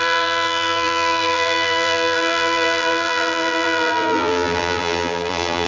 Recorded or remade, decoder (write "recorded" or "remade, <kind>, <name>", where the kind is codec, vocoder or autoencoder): remade, vocoder, BigVGAN v2